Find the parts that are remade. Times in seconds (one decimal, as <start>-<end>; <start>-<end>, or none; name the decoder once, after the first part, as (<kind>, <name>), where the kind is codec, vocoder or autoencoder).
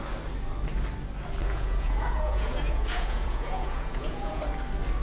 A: 1.4-4.4 (vocoder, Vocos)